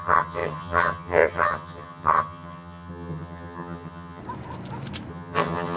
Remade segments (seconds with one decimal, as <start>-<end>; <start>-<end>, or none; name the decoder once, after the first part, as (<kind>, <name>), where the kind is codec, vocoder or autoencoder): 0.0-4.2 (vocoder, HiFi-GAN); 5.1-5.8